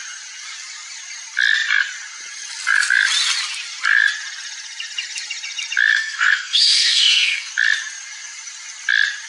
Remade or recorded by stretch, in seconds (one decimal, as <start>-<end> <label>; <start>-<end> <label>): 0.0-5.9 recorded; 5.9-7.5 remade; 7.5-9.3 recorded